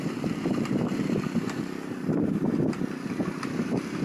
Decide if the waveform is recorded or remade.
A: remade